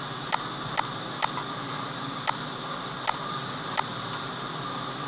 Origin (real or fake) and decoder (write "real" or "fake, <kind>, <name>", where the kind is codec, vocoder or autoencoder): real